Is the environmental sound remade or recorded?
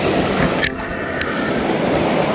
recorded